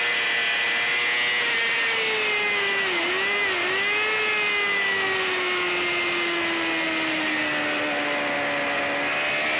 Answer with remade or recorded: recorded